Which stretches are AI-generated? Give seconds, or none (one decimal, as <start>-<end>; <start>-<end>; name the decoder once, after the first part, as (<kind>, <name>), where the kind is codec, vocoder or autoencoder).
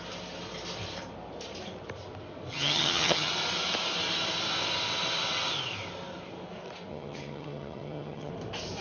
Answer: 2.5-3.3 (vocoder, HiFi-GAN); 6.9-8.3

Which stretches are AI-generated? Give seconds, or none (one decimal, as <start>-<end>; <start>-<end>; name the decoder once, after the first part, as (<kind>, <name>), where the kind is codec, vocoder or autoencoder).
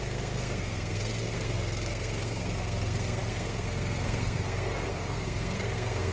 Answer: 0.0-6.1 (codec, SNAC)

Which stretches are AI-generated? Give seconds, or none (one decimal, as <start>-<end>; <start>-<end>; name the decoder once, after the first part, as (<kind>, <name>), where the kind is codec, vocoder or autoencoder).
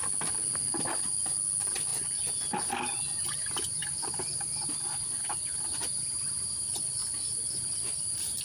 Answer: 3.8-5.0 (vocoder, BigVGAN v2)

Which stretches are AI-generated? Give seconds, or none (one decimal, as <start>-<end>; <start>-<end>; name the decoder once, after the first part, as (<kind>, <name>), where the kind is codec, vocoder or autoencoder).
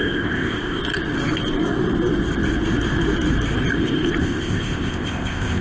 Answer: 0.0-0.8 (codec, ZipCodec); 4.2-5.6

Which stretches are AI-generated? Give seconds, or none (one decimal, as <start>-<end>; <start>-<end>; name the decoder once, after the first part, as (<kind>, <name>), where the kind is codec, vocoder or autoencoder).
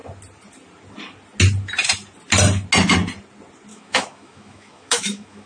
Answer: 3.7-5.5 (autoencoder, DAC-VAE)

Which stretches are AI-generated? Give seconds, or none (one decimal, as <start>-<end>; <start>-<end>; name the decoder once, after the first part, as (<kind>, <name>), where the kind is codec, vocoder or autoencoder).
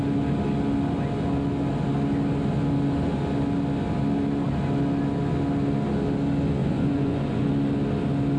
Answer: 6.6-7.5 (vocoder, Vocos)